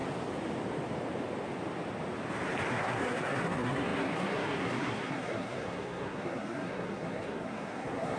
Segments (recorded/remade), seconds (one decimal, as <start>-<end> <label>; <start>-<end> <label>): 0.0-2.7 recorded; 2.7-8.2 remade